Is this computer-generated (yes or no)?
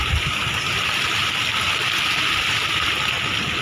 no